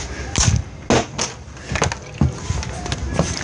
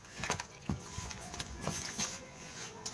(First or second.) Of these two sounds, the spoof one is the second